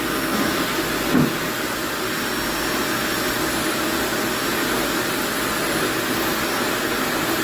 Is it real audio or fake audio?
real